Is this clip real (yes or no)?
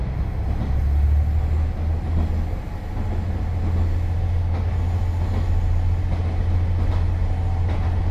yes